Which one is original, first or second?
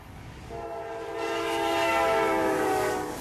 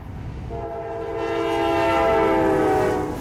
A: second